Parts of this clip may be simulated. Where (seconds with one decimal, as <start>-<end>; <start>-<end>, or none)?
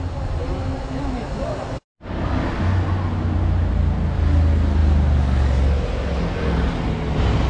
none